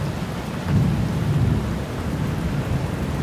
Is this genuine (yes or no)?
yes